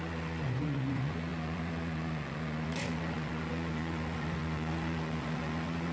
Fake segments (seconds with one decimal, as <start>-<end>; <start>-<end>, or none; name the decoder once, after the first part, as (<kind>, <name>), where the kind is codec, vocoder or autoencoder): 0.0-5.9 (vocoder, Vocos)